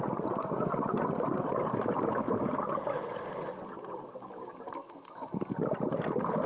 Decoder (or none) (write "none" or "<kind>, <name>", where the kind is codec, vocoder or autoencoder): none